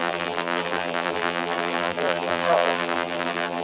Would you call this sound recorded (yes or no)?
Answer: no